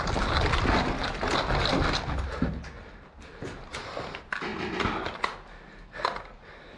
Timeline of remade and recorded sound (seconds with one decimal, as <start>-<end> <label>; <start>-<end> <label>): 0.0-6.8 recorded